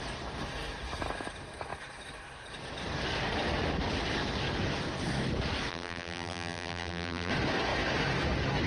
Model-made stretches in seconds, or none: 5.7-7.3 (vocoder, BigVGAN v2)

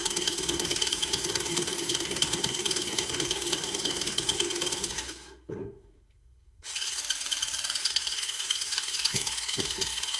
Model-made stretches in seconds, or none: 0.0-7.0 (codec, SNAC); 7.8-10.2

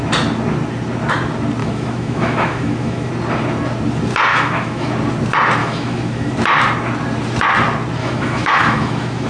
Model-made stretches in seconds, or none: 1.6-3.1 (autoencoder, DAC-VAE); 4.3-4.9; 5.6-6.3; 8.0-9.3